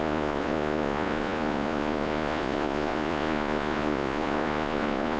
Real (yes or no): no